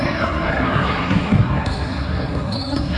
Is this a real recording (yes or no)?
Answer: no